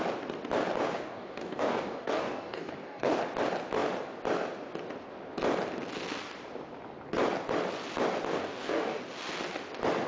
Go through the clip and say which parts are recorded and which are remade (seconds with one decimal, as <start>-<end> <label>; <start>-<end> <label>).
0.0-0.9 recorded; 0.9-3.2 remade; 3.2-8.3 recorded; 8.3-9.0 remade; 9.0-10.1 recorded